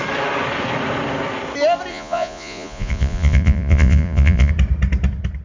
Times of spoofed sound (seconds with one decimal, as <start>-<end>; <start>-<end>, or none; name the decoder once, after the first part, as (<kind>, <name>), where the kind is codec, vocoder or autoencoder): 1.9-4.5 (vocoder, Vocos)